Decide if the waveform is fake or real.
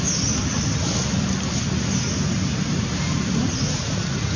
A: real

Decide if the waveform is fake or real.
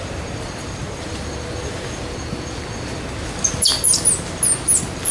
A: real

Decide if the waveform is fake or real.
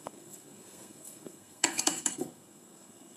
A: fake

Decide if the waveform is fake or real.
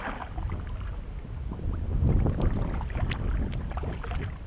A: real